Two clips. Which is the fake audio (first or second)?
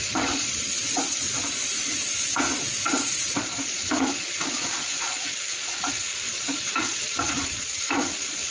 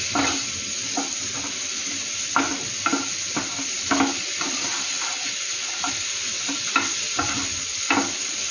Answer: first